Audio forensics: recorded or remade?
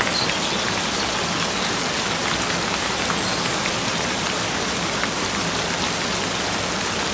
recorded